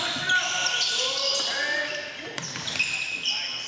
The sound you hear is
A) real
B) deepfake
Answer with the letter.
A